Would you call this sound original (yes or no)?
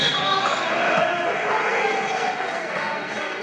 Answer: no